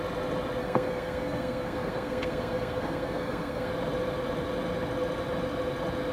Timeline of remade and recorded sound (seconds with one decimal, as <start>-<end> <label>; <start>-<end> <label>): 0.0-0.6 recorded; 0.6-3.7 remade; 3.7-6.1 recorded